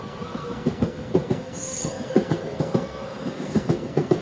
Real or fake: fake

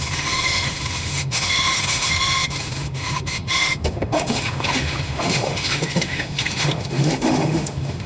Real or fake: fake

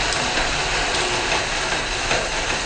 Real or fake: real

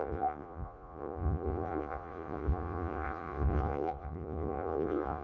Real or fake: fake